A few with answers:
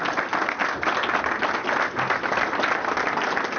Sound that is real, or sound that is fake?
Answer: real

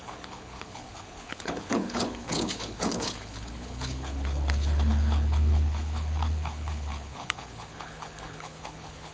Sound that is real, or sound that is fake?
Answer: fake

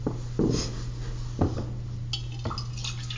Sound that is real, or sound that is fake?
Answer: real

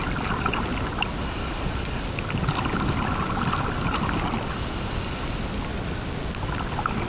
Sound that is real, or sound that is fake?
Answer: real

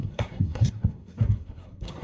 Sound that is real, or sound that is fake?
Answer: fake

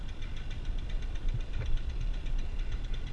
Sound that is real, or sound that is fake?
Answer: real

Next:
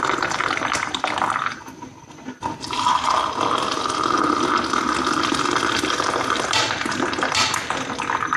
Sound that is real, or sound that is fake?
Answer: fake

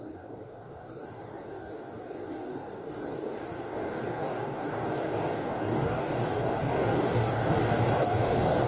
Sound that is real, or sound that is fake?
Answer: fake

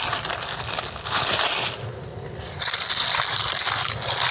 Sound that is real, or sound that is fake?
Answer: real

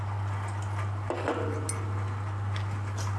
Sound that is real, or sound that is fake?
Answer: real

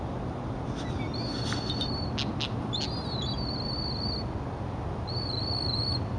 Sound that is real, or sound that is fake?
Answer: real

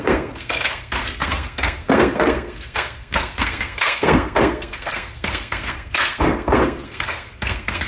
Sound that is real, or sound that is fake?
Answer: fake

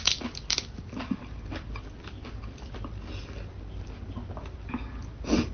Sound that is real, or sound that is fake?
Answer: real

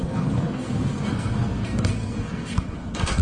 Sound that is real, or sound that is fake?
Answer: fake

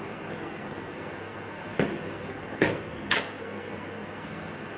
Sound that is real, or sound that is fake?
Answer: fake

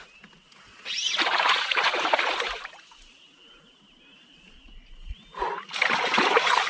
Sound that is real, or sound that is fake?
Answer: real